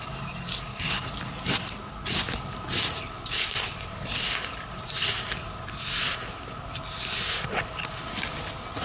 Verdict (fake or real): real